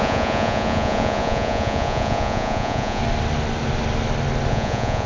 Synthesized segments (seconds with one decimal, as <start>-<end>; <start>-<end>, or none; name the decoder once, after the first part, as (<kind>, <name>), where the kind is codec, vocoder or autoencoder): 0.0-3.0 (vocoder, Vocos); 4.5-5.1